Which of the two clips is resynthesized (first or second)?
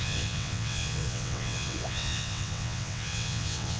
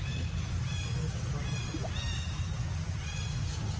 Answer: first